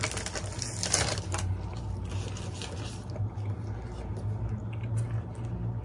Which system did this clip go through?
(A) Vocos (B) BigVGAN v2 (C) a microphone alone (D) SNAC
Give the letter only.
C